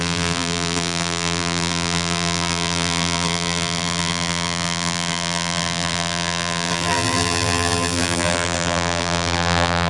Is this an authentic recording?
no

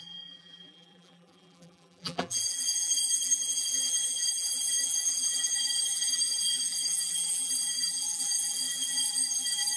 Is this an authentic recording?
no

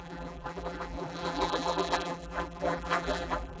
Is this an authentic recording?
no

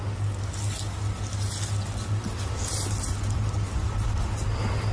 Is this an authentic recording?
yes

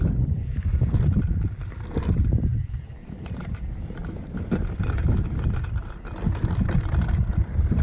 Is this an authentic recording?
no